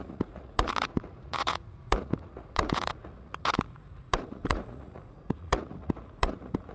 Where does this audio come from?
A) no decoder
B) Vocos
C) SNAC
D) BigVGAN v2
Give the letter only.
B